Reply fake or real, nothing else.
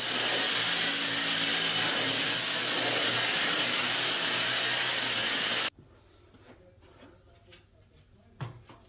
real